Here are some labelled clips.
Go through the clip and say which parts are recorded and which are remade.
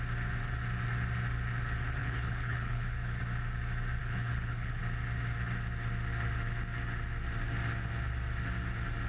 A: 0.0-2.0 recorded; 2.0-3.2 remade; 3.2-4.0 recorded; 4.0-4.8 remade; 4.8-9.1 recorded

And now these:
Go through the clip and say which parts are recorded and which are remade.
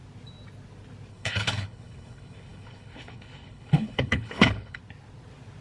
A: 0.0-1.1 recorded; 1.1-4.8 remade; 4.8-5.6 recorded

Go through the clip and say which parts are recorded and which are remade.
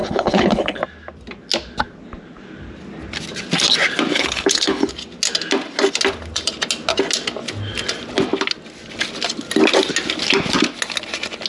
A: 0.0-0.8 remade; 0.8-4.1 recorded; 4.1-4.9 remade; 4.9-11.5 recorded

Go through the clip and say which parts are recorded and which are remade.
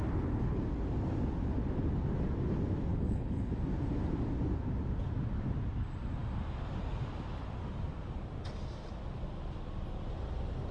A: 0.0-2.9 recorded; 2.9-3.5 remade; 3.5-10.7 recorded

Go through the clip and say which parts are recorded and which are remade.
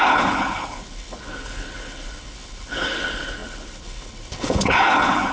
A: 0.0-5.3 remade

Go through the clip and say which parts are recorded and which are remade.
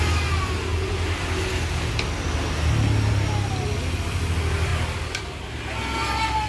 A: 0.0-6.5 recorded